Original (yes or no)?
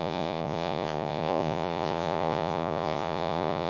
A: no